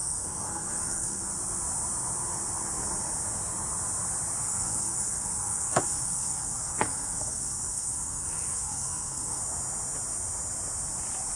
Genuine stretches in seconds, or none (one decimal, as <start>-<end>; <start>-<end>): 1.3-4.4; 9.4-11.4